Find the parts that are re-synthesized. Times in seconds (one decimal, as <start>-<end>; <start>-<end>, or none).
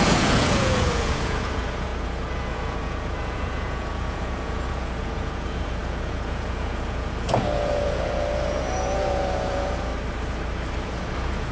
0.0-9.9; 10.8-11.5